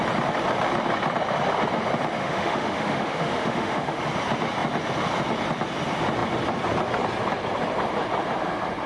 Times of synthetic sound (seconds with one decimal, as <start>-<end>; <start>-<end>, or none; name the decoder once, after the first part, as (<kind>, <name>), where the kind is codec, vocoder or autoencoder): 2.2-4.0 (autoencoder, DAC-VAE)

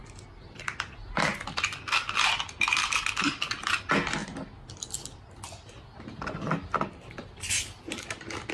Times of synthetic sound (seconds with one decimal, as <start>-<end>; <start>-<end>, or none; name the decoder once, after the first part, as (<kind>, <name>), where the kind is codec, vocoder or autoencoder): none

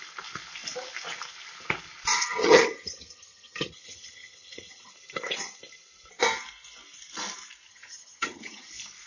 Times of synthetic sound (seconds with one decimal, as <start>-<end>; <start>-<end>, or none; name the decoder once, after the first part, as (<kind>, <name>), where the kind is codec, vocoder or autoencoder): 2.1-4.9 (vocoder, HiFi-GAN); 7.7-8.7

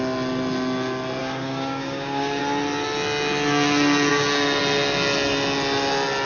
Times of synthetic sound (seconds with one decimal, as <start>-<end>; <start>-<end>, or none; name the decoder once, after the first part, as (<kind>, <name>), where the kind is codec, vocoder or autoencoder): 1.2-2.4 (codec, DAC)

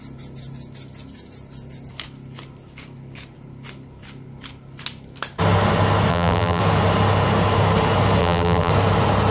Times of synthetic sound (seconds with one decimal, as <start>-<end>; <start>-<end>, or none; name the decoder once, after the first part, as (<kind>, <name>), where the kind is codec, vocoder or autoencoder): 6.1-6.6 (vocoder, BigVGAN v2); 8.2-8.7

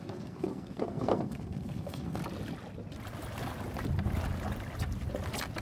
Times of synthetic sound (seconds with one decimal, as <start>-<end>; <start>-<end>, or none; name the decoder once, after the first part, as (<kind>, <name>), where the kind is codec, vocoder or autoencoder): 0.0-2.2 (codec, SNAC)

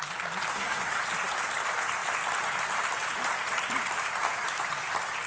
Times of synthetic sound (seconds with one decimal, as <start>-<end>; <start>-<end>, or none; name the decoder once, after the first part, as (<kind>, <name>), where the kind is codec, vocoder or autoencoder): 0.5-1.0 (codec, SNAC)